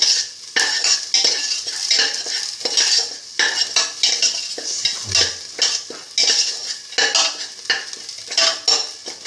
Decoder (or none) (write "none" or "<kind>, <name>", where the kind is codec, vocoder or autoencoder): none